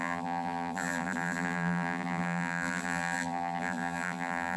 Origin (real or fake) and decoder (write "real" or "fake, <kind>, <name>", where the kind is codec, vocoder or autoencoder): fake, vocoder, BigVGAN v2